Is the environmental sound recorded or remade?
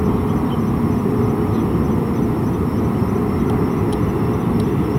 recorded